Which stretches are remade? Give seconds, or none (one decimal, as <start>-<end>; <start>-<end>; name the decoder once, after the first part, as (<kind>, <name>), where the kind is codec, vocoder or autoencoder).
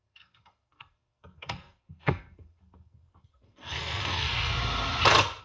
0.0-4.5 (codec, SNAC)